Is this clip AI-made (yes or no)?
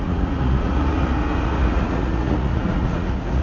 yes